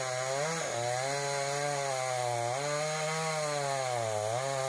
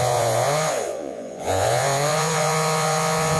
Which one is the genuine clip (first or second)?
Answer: first